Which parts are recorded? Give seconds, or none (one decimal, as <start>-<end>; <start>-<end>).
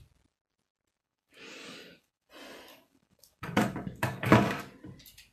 0.0-1.0; 2.3-2.7; 4.6-5.3